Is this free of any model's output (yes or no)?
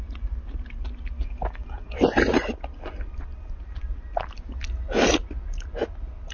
yes